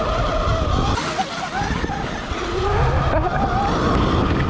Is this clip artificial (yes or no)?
no